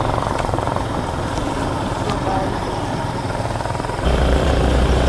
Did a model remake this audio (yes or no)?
yes